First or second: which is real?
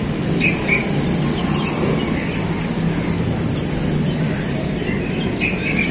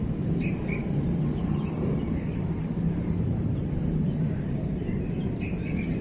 first